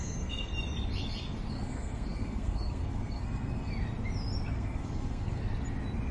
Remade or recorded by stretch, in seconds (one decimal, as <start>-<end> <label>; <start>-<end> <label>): 0.0-0.5 remade; 0.5-1.5 recorded; 1.5-3.7 remade; 3.7-4.5 recorded; 4.5-5.4 remade; 5.4-6.1 recorded

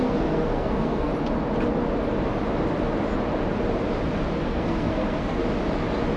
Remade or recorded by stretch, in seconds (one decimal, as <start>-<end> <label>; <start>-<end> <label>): 0.0-1.1 remade; 1.1-4.4 recorded; 4.4-5.4 remade; 5.4-6.2 recorded

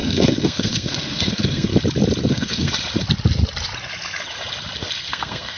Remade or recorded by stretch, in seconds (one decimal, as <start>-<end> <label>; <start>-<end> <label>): 0.0-1.7 remade; 1.7-2.3 recorded; 2.3-2.7 remade; 2.7-5.1 recorded; 5.1-5.6 remade

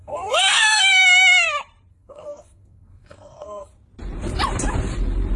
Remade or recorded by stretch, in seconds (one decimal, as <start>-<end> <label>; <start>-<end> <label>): 0.0-1.0 remade; 1.0-1.9 recorded; 1.9-3.7 remade; 3.7-5.4 recorded

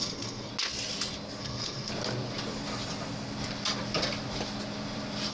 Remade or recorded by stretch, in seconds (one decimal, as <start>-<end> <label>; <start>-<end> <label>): 0.0-0.5 remade; 0.5-1.4 recorded; 1.4-1.9 remade; 1.9-5.3 recorded

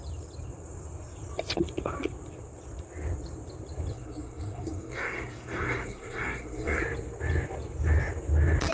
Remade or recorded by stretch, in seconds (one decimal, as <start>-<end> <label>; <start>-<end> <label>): 0.0-3.9 recorded; 3.9-6.8 remade; 6.8-8.7 recorded